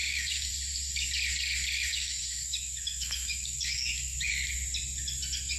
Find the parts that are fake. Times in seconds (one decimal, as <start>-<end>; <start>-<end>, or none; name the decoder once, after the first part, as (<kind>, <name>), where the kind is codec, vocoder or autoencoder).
0.0-0.5 (autoencoder, DAC-VAE); 1.9-4.3